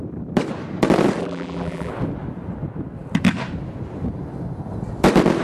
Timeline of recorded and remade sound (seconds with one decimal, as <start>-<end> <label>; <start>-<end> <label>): 0.0-1.2 recorded; 1.2-1.9 remade; 1.9-5.4 recorded